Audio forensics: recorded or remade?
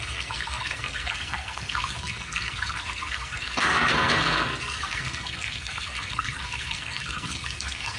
remade